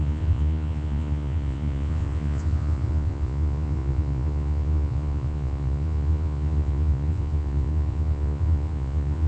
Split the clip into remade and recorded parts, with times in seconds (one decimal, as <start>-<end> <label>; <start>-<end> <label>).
0.0-9.3 remade